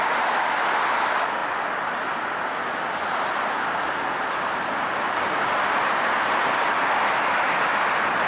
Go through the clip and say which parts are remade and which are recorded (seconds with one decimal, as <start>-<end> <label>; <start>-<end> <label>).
0.0-8.3 recorded